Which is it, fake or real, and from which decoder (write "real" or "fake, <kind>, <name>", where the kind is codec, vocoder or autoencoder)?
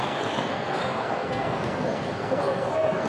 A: fake, codec, SNAC